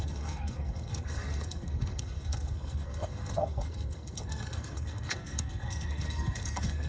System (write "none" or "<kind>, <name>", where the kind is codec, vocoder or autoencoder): codec, SNAC